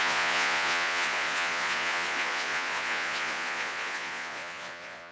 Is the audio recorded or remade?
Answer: remade